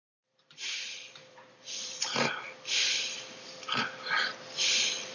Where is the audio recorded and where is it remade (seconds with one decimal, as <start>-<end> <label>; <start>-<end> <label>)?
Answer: 0.0-2.3 remade; 2.3-5.1 recorded